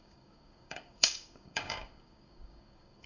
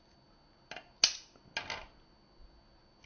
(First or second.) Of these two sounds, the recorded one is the second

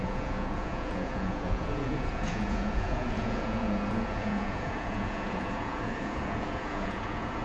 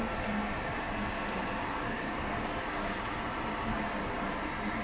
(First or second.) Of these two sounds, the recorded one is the second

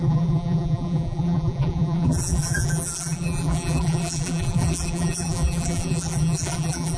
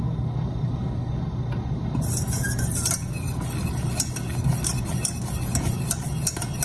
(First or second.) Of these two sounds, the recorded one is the second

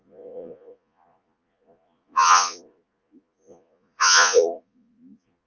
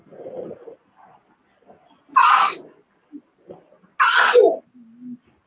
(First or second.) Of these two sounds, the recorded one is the second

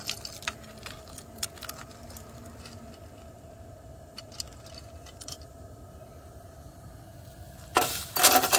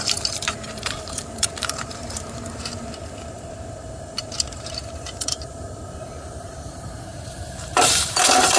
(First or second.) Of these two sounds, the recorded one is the first